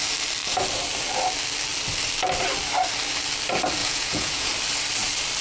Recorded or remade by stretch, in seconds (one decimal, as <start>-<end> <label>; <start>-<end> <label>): 0.0-3.8 recorded; 3.8-4.5 remade; 4.5-5.4 recorded